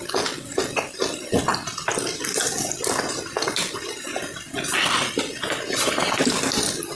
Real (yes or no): yes